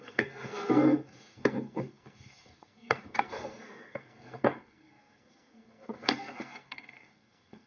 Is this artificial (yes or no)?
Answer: yes